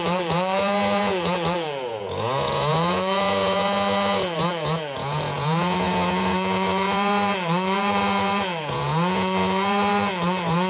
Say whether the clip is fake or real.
fake